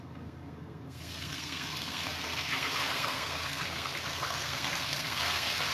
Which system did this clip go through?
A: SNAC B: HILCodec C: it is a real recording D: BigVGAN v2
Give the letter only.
A